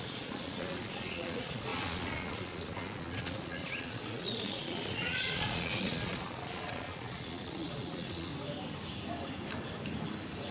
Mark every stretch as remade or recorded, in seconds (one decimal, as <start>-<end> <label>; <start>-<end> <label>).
0.0-8.3 remade; 8.3-10.5 recorded